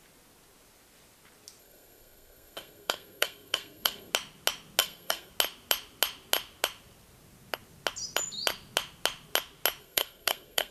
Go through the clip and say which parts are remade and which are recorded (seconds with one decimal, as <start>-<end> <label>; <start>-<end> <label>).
0.0-1.6 recorded; 1.6-4.1 remade; 4.1-4.8 recorded; 4.8-5.3 remade; 5.3-9.8 recorded; 9.8-10.7 remade